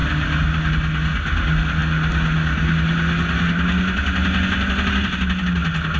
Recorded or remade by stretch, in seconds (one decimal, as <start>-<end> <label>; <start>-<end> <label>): 0.0-6.0 recorded